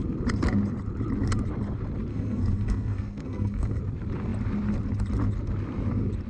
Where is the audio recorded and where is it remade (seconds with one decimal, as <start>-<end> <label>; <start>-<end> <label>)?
0.0-2.1 recorded; 2.1-3.8 remade; 3.8-6.3 recorded